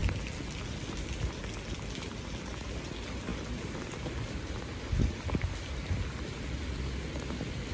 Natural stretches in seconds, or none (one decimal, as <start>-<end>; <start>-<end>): 0.0-7.7